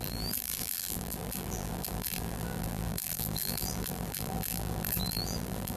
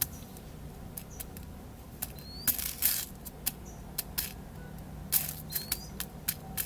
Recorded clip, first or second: second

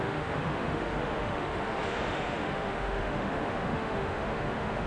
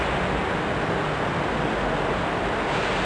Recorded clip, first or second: second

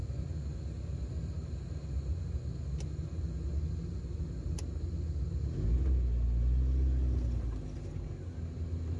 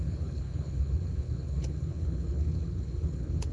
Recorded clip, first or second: first